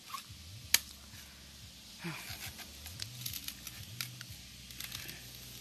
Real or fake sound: real